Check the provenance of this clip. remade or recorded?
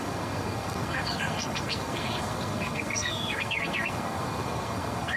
remade